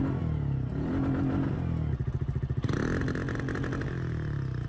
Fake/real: real